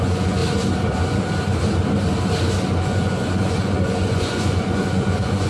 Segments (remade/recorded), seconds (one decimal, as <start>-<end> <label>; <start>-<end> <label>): 0.0-0.4 remade; 0.4-2.8 recorded; 2.8-5.5 remade